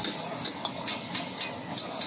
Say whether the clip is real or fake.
real